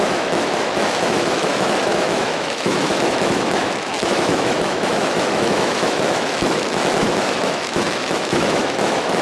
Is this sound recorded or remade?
remade